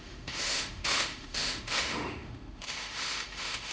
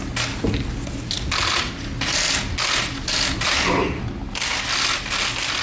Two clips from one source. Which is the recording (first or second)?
second